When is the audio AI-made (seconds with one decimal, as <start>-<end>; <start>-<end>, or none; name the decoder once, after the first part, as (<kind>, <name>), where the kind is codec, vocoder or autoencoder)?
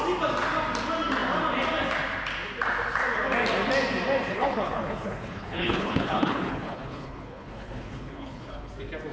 4.3-8.7 (codec, HILCodec)